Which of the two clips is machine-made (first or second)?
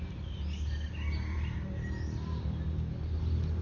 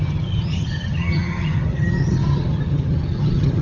second